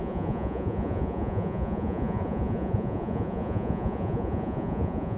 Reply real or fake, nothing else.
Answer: fake